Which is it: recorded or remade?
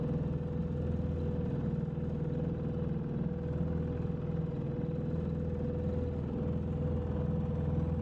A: recorded